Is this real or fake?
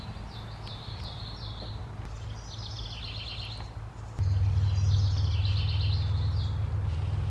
real